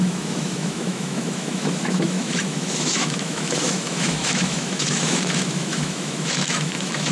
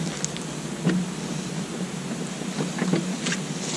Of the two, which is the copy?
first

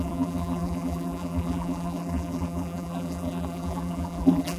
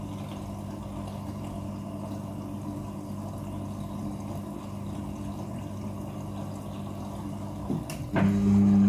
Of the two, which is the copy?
first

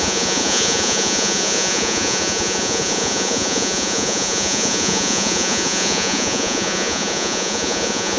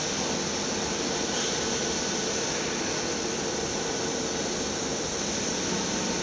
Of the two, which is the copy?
first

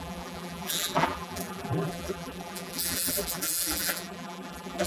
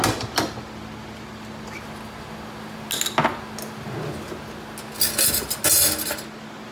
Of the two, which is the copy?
first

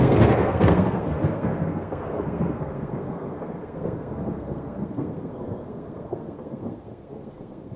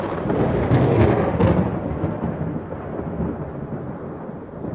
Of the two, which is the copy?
first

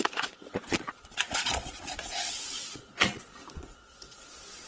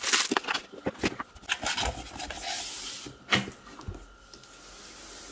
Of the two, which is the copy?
first